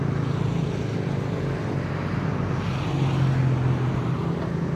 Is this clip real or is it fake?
real